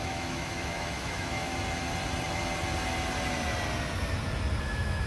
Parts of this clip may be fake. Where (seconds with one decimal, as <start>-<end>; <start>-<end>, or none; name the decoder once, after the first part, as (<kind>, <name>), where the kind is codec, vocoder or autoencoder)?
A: 0.0-1.5 (autoencoder, DAC-VAE); 4.6-5.1